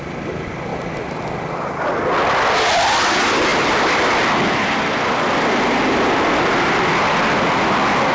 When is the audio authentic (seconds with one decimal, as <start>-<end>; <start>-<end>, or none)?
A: 0.0-0.7; 2.0-8.1